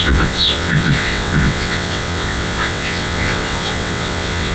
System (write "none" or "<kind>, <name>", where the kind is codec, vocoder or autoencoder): vocoder, WaveNeXt